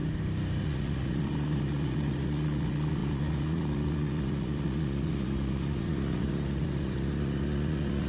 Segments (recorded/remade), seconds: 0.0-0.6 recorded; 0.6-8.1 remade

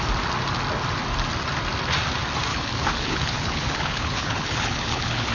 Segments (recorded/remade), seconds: 0.0-2.5 recorded; 2.5-5.3 remade

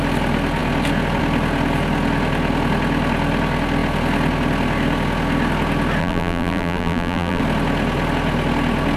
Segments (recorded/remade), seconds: 0.0-6.0 recorded; 6.0-7.4 remade; 7.4-9.0 recorded

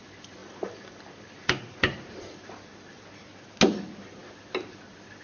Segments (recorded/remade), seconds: 0.0-0.4 recorded; 0.4-2.9 remade; 2.9-5.2 recorded

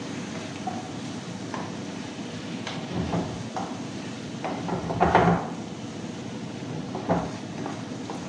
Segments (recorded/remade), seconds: 0.0-8.3 recorded

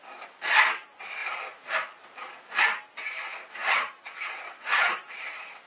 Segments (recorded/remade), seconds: 0.0-5.7 recorded

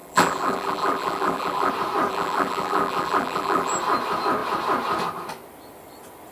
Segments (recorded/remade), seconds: 0.0-1.7 remade; 1.7-2.1 recorded; 2.1-3.7 remade; 3.7-6.3 recorded